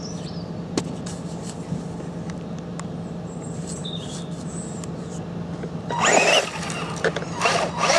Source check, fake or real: real